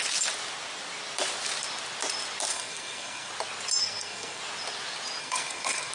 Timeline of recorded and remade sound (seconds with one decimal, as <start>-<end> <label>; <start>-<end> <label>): 0.0-2.5 recorded; 2.5-3.3 remade; 3.3-3.8 recorded; 3.8-4.4 remade; 4.4-5.2 recorded; 5.2-5.9 remade